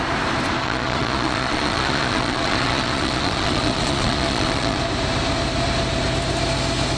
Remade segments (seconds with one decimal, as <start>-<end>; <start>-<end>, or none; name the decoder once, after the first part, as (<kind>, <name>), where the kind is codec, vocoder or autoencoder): 0.6-4.8 (vocoder, Vocos)